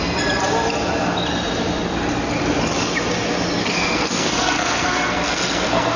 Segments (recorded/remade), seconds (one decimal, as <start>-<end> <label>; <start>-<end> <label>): 0.0-3.6 recorded; 3.6-6.0 remade